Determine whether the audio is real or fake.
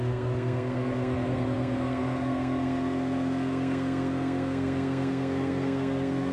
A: fake